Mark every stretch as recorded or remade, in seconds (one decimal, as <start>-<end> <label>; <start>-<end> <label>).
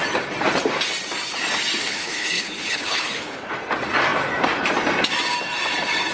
0.0-1.8 recorded; 1.8-3.5 remade; 3.5-6.1 recorded